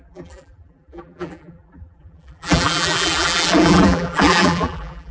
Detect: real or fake fake